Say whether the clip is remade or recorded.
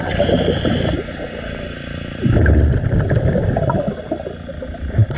recorded